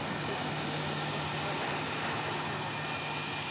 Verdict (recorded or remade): recorded